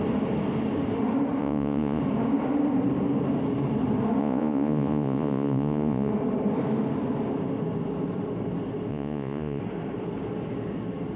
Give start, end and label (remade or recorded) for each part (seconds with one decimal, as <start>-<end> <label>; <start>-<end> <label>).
0.0-1.4 recorded; 1.4-2.0 remade; 2.0-4.2 recorded; 4.2-6.1 remade; 6.1-8.9 recorded; 8.9-9.6 remade; 9.6-11.2 recorded